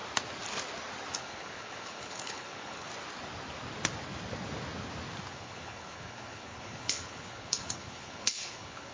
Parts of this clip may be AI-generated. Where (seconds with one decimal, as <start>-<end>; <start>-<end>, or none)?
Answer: 1.2-2.9; 5.3-8.9